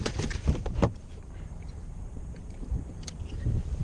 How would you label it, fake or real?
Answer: fake